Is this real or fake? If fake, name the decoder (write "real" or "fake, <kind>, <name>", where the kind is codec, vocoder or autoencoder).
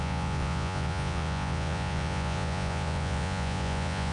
fake, vocoder, Vocos